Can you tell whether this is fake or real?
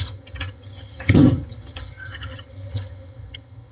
fake